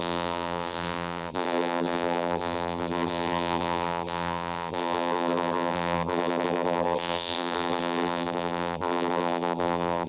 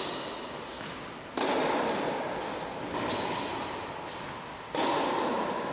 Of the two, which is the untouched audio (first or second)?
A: second